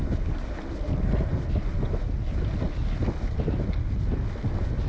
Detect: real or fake real